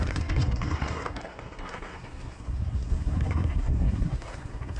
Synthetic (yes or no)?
yes